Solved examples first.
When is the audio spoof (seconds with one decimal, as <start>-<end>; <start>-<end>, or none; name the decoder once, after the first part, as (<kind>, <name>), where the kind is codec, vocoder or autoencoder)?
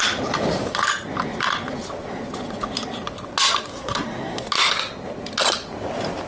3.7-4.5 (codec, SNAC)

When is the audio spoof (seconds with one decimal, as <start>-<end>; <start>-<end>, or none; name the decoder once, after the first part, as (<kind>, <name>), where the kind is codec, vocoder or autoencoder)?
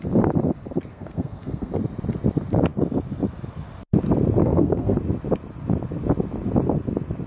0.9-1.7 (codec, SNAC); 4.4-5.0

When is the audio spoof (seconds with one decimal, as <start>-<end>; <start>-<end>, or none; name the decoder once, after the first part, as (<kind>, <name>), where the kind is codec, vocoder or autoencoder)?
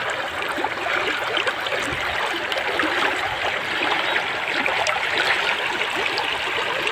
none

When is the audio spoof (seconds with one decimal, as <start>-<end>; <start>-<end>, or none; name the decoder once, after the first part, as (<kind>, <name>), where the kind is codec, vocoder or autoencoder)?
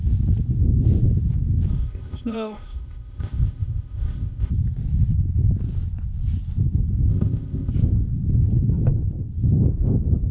1.7-4.5 (codec, ZipCodec); 7.1-7.7